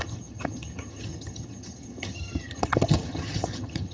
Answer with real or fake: fake